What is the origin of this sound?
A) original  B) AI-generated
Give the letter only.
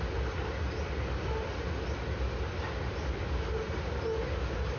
A